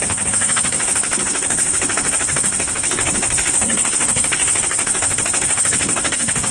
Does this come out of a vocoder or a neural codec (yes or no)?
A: yes